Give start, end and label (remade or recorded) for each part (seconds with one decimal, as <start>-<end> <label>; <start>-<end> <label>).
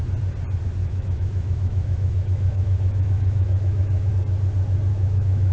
0.0-0.8 recorded; 0.8-4.1 remade; 4.1-4.9 recorded; 4.9-5.5 remade